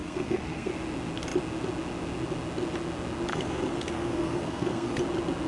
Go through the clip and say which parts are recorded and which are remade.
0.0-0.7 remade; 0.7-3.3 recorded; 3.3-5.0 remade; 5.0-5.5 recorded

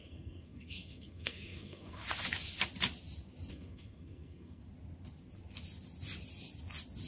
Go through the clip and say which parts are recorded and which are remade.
0.0-2.0 remade; 2.0-3.5 recorded; 3.5-4.6 remade; 4.6-7.1 recorded

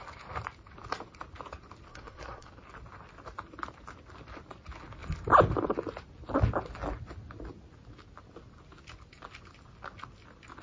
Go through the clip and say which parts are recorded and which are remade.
0.0-1.9 recorded; 1.9-2.5 remade; 2.5-10.6 recorded

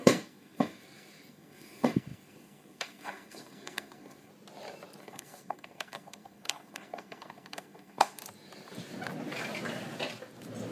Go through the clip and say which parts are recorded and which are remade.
0.0-4.3 remade; 4.3-5.0 recorded; 5.0-8.2 remade; 8.2-10.7 recorded

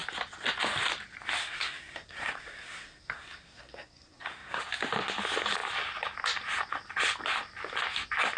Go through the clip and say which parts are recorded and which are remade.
0.0-1.4 recorded; 1.4-4.6 remade; 4.6-8.4 recorded

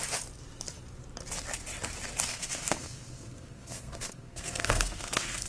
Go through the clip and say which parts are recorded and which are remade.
0.0-2.3 recorded; 2.3-5.5 remade

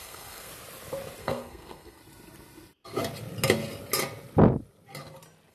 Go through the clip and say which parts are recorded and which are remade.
0.0-0.5 remade; 0.5-1.2 recorded; 1.2-2.0 remade; 2.0-5.5 recorded

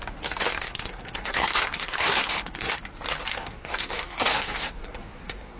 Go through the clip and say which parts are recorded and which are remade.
0.0-0.5 recorded; 0.5-2.8 remade; 2.8-3.3 recorded; 3.3-5.6 remade